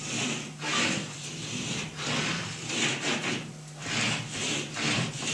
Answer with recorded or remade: remade